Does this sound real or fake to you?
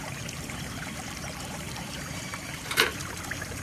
fake